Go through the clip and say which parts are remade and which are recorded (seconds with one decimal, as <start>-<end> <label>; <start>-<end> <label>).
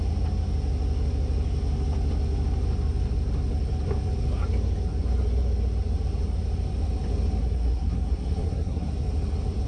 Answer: 0.0-7.4 recorded; 7.4-8.9 remade; 8.9-9.7 recorded